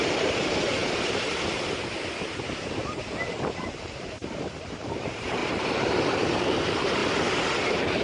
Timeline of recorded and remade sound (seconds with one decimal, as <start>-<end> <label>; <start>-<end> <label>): 0.0-5.4 remade; 5.4-6.6 recorded; 6.6-7.0 remade; 7.0-7.6 recorded; 7.6-8.0 remade